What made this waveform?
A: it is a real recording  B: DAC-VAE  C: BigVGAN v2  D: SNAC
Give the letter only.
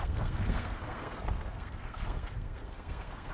D